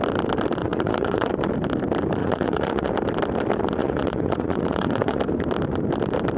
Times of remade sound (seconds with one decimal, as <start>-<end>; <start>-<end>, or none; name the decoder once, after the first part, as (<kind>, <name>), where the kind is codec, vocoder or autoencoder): 0.6-1.3 (vocoder, Vocos); 2.2-2.9; 3.8-5.2